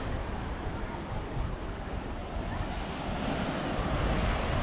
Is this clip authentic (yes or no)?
yes